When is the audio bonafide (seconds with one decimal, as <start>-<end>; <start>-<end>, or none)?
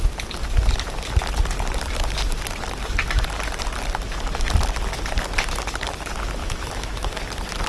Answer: 0.0-6.4; 7.2-7.7